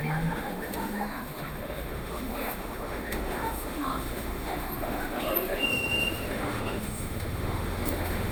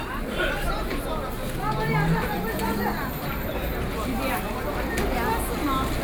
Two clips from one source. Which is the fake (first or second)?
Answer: first